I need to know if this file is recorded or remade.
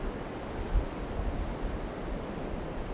recorded